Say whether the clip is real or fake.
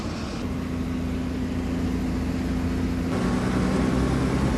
real